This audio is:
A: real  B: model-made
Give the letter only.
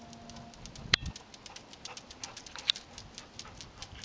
A